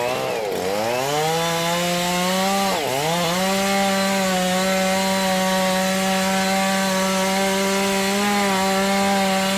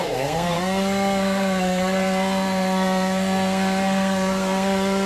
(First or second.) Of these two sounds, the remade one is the second